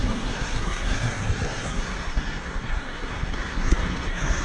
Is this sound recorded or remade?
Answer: remade